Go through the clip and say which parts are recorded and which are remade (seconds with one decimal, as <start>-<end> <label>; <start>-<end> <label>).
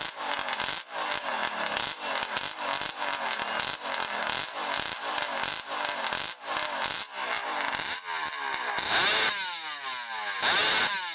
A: 0.0-11.1 recorded